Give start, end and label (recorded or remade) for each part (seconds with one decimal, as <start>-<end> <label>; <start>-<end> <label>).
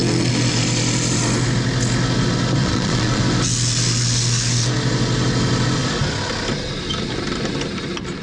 0.0-2.6 recorded; 2.6-3.2 remade; 3.2-8.2 recorded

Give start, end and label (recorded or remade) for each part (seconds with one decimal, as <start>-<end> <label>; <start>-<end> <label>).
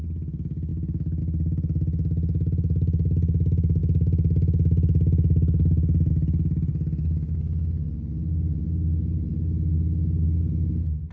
0.0-11.1 recorded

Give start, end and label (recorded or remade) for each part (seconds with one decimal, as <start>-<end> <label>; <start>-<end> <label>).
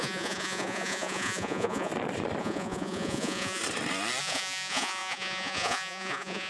0.0-1.9 remade; 1.9-2.4 recorded; 2.4-3.6 remade; 3.6-4.2 recorded; 4.2-6.5 remade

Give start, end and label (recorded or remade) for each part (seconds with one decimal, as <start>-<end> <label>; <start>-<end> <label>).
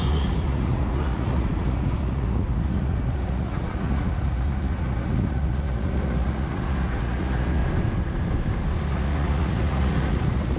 0.0-7.6 remade; 7.6-8.9 recorded; 8.9-10.6 remade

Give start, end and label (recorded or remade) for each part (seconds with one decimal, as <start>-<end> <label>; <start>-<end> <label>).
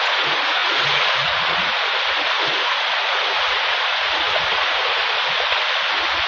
0.0-5.0 remade; 5.0-6.3 recorded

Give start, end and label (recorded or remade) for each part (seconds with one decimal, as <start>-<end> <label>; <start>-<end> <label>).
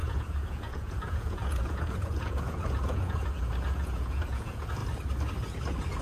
0.0-4.8 remade; 4.8-6.0 recorded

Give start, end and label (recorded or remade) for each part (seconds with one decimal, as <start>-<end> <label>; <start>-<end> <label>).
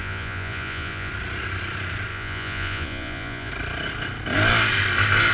0.0-1.1 remade; 1.1-2.1 recorded; 2.1-3.5 remade; 3.5-5.3 recorded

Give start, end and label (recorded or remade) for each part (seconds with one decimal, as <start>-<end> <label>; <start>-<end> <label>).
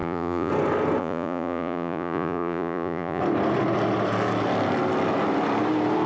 0.0-0.5 remade; 0.5-1.0 recorded; 1.0-3.2 remade; 3.2-6.1 recorded